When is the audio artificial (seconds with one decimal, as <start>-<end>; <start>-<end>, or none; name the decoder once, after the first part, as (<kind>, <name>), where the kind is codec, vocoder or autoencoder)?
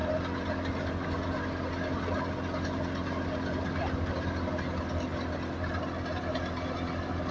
none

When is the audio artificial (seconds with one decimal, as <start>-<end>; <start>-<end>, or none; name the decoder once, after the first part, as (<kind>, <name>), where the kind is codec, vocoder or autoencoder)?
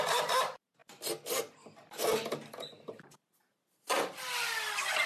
none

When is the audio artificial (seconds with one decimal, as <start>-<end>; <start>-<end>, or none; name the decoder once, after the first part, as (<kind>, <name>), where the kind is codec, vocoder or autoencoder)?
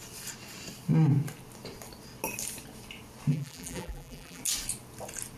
3.3-4.4 (vocoder, BigVGAN v2)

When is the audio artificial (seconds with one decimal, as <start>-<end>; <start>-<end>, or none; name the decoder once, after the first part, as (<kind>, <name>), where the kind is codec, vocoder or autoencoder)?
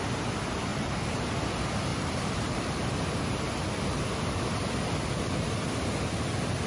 0.7-1.3 (vocoder, BigVGAN v2); 1.9-2.6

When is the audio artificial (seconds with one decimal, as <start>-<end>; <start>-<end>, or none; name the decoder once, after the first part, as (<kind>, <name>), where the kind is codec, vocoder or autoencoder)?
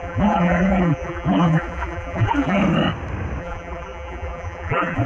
0.0-2.6 (vocoder, BigVGAN v2); 3.4-5.1